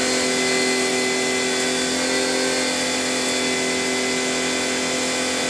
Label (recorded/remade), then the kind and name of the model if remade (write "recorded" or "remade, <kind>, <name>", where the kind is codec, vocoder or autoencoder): recorded